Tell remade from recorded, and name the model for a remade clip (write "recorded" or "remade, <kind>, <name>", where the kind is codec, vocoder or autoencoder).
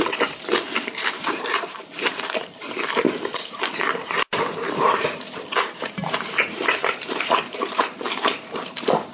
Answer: remade, vocoder, BigVGAN v2